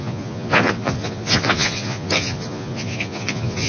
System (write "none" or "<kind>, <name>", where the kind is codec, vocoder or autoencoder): vocoder, Vocos